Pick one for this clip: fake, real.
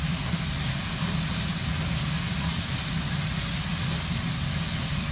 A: real